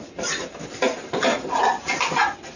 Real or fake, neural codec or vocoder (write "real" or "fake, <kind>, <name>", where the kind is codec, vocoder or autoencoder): real